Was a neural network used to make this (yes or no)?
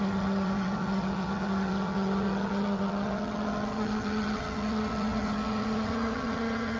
yes